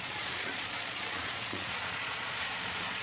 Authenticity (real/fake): fake